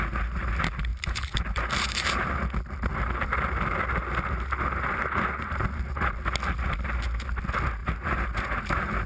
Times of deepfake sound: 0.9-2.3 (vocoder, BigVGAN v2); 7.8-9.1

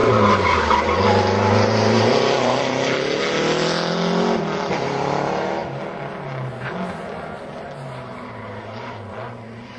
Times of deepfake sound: none

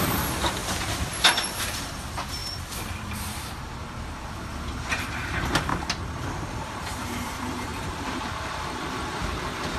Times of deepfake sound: 0.0-0.6 (vocoder, BigVGAN v2); 1.3-5.7; 6.6-9.8

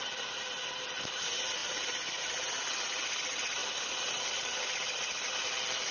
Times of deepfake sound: none

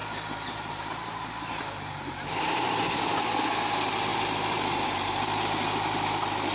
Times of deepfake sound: 0.0-3.0 (vocoder, BigVGAN v2); 4.1-5.2

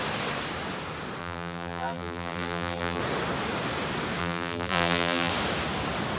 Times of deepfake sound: 1.2-3.0 (vocoder, BigVGAN v2); 4.2-5.3